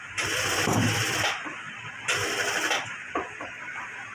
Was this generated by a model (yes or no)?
no